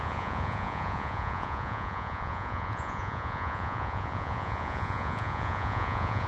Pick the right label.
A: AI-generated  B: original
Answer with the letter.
A